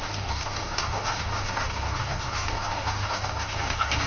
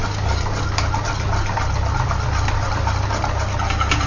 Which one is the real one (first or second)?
second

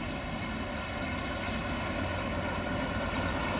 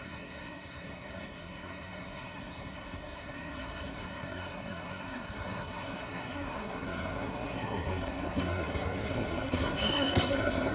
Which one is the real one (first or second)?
first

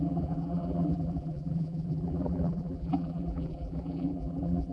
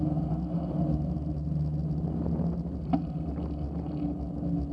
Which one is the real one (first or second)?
second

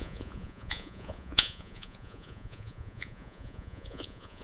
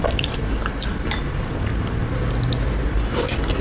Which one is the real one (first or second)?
second